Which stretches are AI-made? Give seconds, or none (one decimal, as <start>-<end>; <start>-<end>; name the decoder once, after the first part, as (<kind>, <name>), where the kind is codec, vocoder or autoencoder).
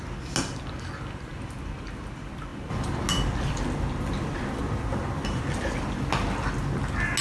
none